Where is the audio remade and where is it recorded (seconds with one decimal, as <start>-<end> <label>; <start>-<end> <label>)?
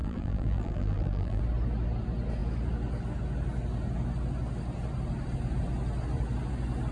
0.0-1.4 remade; 1.4-6.9 recorded